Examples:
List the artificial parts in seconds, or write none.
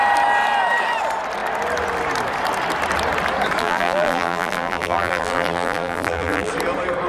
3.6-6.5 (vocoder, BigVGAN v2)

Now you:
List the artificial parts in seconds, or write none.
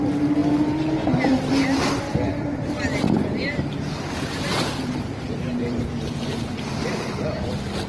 0.4-1.6 (vocoder, BigVGAN v2); 2.5-7.2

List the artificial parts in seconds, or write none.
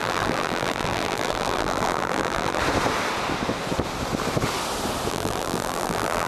0.0-2.6 (vocoder, BigVGAN v2); 5.1-6.3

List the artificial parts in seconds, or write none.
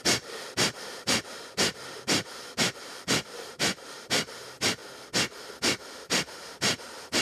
0.0-4.8 (vocoder, BigVGAN v2); 6.0-7.2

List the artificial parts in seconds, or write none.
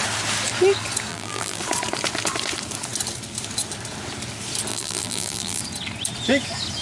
1.1-1.6 (vocoder, BigVGAN v2); 4.7-5.6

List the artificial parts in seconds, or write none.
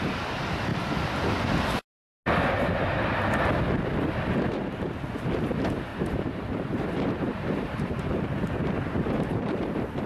5.9-10.1 (vocoder, BigVGAN v2)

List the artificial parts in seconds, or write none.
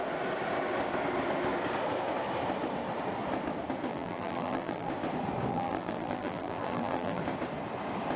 3.9-4.9 (vocoder, BigVGAN v2); 5.5-7.2